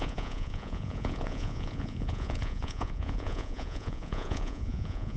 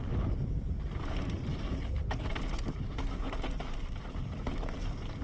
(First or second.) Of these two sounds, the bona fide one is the second